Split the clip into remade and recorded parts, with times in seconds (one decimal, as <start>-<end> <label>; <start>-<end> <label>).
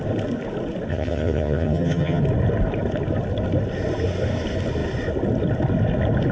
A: 0.0-0.9 recorded; 0.9-2.2 remade; 2.2-6.3 recorded